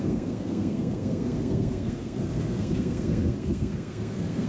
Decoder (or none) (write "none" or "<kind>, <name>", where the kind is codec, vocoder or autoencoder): codec, SNAC